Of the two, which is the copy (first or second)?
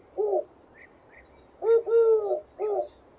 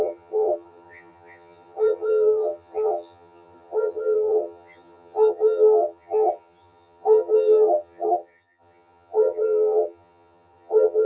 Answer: second